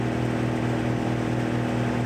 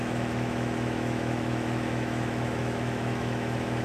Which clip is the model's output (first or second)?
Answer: second